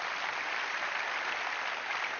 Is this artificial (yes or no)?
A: no